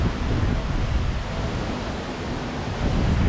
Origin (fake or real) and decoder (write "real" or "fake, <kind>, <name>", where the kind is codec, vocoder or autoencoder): real